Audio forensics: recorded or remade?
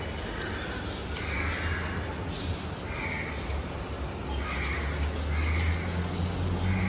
recorded